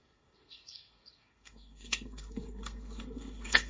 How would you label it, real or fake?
fake